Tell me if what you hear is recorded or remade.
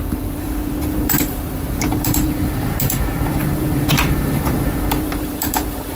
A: remade